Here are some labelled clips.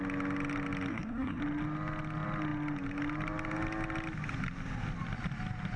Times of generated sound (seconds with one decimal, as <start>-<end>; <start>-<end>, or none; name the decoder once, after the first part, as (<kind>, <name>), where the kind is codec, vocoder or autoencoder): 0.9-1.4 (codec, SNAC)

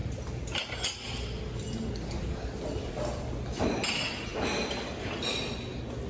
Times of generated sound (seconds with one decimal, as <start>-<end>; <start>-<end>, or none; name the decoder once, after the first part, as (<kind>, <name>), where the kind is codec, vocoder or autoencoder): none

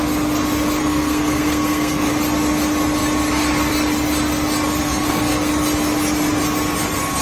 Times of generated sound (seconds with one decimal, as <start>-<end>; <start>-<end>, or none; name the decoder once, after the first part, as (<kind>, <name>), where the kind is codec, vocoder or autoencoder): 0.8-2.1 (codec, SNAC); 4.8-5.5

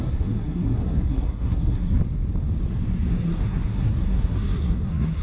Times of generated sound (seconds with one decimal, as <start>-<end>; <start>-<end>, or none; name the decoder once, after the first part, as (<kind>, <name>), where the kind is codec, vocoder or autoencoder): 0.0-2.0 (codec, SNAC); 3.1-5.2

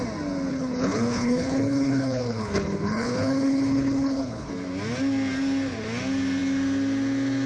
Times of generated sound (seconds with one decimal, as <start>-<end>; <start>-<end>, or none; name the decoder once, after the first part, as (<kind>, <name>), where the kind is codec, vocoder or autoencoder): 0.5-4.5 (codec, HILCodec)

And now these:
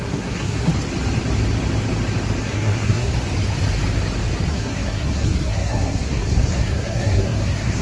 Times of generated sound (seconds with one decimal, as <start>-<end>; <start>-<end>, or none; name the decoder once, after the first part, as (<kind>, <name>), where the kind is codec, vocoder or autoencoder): 0.0-0.7 (codec, SNAC); 2.4-3.1; 4.5-7.8

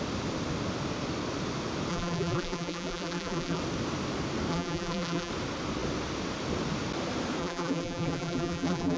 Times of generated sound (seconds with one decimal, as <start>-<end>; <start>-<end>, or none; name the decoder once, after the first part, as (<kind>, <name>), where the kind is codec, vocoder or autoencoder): 1.9-3.6 (vocoder, BigVGAN v2); 4.5-5.3; 7.4-9.0

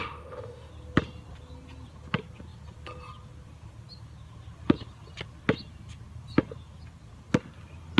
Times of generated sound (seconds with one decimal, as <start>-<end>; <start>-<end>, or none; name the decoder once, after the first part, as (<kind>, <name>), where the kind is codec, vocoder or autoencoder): 0.0-0.7 (autoencoder, DAC-VAE)